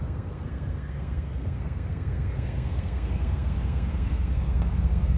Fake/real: fake